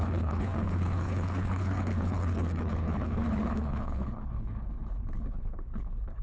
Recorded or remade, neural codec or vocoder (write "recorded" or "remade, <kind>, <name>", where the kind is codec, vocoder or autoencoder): remade, codec, HILCodec